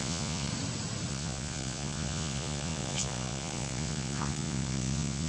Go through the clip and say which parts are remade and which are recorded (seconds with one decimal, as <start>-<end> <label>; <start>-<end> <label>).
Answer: 0.0-0.5 remade; 0.5-1.1 recorded; 1.1-5.3 remade